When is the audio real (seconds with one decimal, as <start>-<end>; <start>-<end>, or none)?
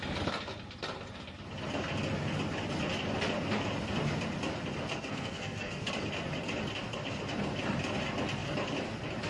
0.0-4.9; 5.9-9.3